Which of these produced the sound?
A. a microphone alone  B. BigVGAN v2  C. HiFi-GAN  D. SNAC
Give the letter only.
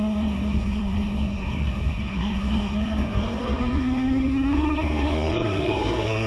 D